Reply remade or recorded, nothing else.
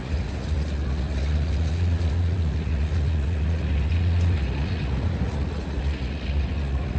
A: remade